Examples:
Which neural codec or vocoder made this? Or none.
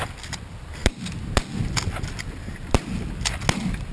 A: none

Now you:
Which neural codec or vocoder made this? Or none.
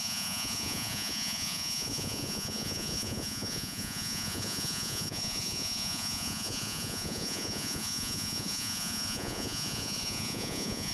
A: vocoder, Vocos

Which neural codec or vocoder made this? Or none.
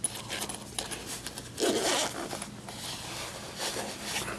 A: none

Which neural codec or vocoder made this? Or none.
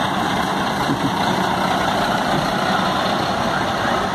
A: none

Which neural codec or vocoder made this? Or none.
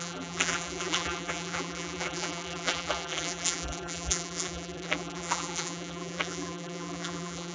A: vocoder, BigVGAN v2